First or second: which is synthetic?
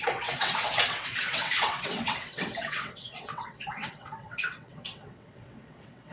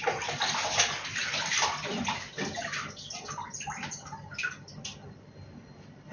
first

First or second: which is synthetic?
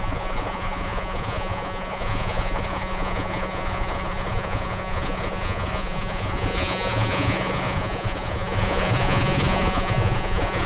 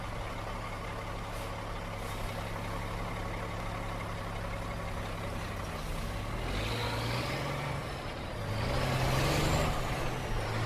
first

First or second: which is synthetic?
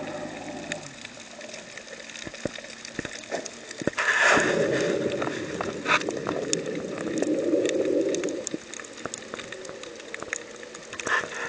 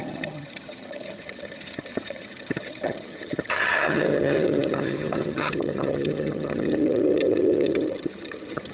second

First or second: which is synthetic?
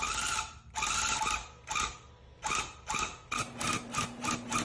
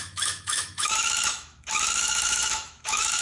second